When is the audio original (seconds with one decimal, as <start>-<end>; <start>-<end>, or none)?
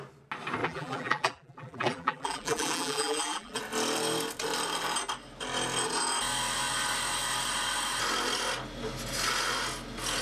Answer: 0.0-0.6; 3.6-10.2